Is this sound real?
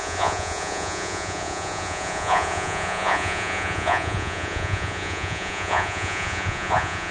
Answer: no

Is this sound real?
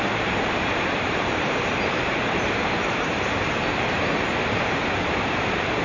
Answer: no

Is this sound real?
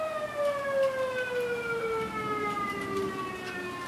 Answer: yes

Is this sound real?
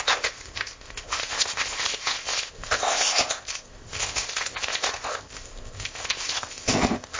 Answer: no